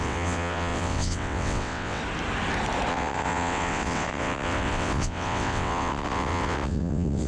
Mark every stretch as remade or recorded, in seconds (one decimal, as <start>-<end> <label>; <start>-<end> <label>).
0.0-2.0 remade; 2.0-2.9 recorded; 2.9-7.3 remade